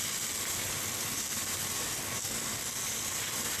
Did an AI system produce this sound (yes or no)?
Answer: no